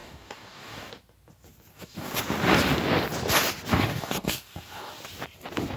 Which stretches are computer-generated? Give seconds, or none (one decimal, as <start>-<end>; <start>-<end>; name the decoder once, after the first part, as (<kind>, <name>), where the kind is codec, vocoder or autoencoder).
0.0-0.9 (codec, DAC); 1.7-2.2; 3.7-4.9